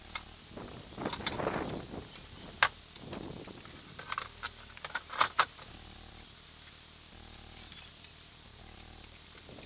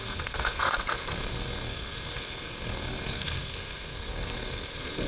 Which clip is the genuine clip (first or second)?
first